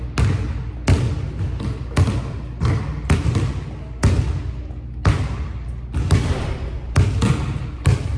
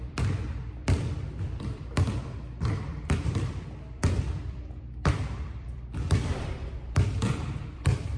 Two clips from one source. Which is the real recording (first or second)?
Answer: first